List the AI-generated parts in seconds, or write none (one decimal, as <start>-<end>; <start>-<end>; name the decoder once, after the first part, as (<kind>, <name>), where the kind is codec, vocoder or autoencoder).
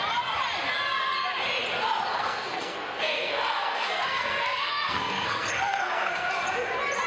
2.1-6.3 (codec, SNAC)